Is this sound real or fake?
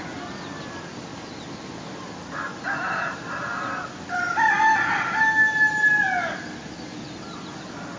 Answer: real